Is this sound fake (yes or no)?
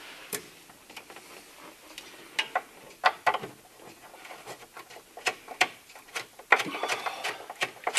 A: no